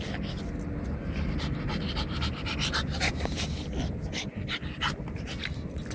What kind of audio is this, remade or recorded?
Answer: recorded